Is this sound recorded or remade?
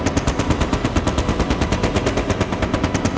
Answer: recorded